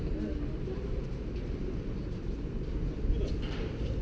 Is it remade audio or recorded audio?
recorded